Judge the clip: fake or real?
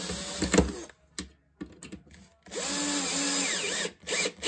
real